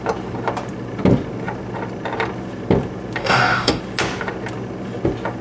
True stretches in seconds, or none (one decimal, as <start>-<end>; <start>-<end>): 0.0-3.2; 3.8-5.4

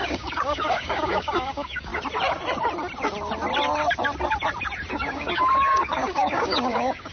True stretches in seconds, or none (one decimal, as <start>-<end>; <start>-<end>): 1.9-4.9